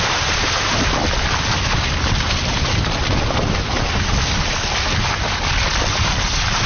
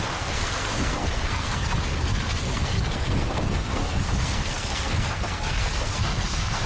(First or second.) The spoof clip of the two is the second